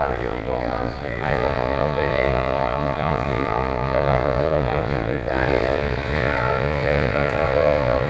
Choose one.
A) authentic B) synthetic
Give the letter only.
B